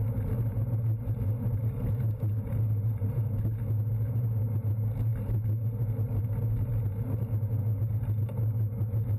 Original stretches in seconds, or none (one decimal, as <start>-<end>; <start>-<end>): 0.0-0.5; 3.4-9.2